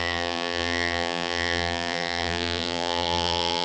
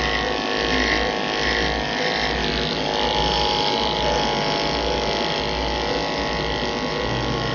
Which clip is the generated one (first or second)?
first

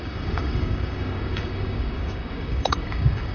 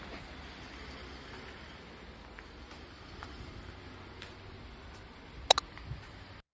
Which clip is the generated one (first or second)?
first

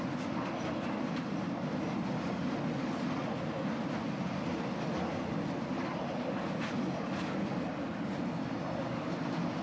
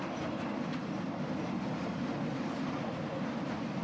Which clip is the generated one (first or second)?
second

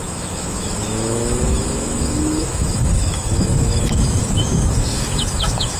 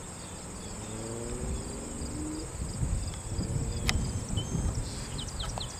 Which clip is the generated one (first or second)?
first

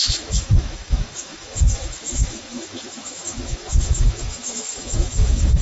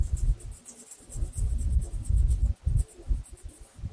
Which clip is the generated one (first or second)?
first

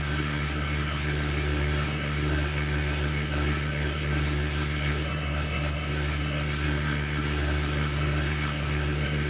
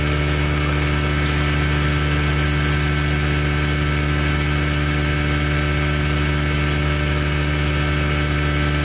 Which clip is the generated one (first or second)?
first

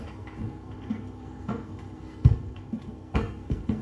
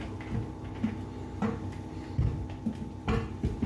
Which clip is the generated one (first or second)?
first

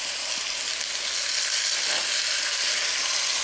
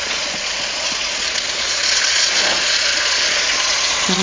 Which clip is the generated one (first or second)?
second